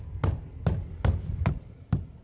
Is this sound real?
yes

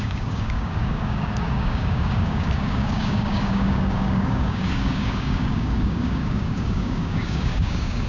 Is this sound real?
no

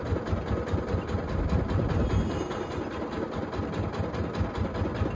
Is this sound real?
yes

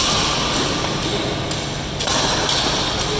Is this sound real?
yes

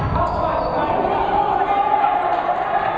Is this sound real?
yes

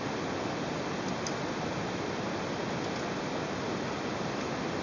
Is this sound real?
yes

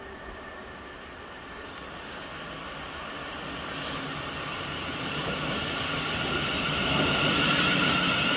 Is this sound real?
yes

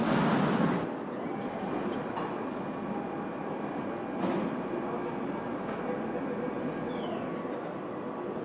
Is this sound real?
yes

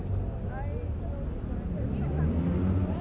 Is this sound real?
yes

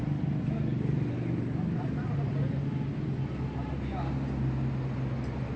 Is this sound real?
yes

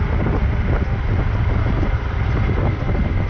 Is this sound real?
yes